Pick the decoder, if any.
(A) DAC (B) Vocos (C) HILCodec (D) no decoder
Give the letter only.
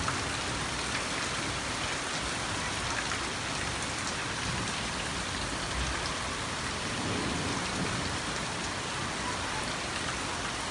D